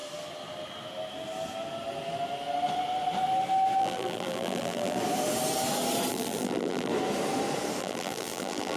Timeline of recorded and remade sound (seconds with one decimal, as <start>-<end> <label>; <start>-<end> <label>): 0.0-3.8 recorded; 3.8-5.0 remade; 5.0-6.1 recorded; 6.1-6.9 remade; 6.9-7.8 recorded; 7.8-8.8 remade